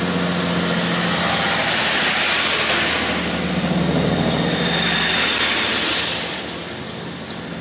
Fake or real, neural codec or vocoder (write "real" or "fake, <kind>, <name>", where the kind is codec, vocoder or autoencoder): real